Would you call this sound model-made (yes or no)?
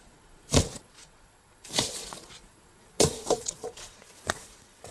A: yes